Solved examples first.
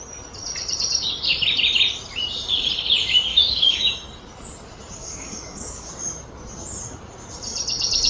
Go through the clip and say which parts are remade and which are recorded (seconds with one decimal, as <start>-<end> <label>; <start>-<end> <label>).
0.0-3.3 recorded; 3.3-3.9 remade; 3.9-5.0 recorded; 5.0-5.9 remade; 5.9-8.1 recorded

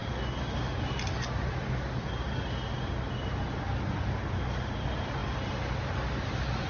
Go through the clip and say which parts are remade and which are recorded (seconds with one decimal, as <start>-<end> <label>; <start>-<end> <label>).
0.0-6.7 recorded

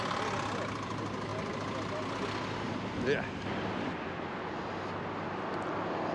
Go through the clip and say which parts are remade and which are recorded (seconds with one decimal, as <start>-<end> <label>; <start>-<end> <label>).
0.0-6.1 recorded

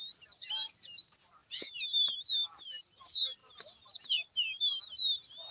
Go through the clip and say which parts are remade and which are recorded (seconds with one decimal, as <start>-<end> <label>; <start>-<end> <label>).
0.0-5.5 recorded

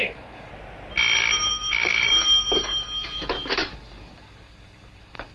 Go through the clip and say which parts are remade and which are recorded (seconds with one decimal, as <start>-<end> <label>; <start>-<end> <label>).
0.0-0.5 remade; 0.5-1.5 recorded; 1.5-5.3 remade